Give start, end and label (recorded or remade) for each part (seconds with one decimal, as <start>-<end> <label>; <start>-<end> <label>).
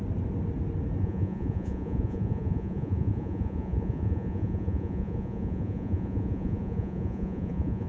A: 0.0-1.0 recorded; 1.0-7.9 remade